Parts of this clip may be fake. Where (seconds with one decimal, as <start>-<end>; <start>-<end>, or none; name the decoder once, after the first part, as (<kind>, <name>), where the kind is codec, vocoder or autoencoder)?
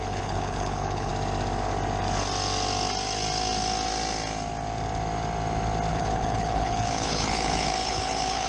0.0-1.1 (codec, HILCodec); 5.9-8.5